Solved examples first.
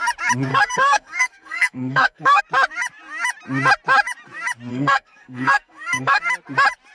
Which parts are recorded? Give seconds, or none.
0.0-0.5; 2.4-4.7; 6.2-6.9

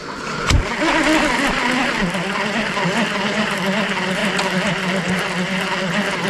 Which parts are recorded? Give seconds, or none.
0.0-6.3

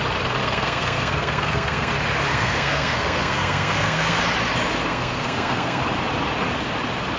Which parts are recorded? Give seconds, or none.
0.0-0.4; 1.9-2.3; 4.2-4.9; 5.8-7.2

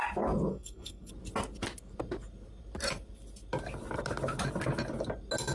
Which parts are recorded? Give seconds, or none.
0.0-0.5; 1.1-5.5

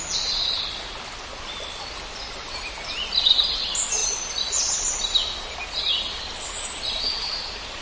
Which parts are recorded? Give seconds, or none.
0.0-7.8

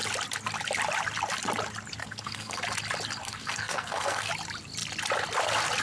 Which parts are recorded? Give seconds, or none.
0.0-2.0; 2.6-3.2; 4.3-5.8

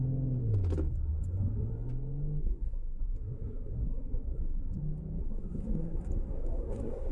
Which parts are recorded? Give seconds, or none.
0.0-0.9; 1.7-2.4; 4.8-5.2